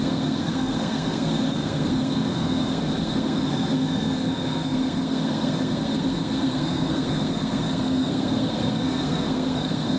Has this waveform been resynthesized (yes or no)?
yes